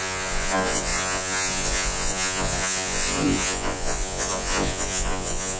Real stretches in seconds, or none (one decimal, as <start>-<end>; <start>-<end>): none